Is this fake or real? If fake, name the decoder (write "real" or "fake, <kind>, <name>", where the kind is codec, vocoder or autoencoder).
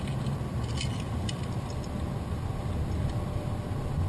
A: real